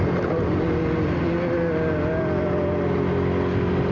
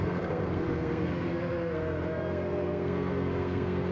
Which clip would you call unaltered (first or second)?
first